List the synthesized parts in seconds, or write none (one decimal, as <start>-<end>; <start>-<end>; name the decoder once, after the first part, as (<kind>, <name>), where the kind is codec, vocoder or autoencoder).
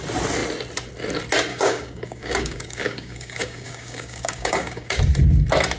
1.5-5.0 (codec, DAC)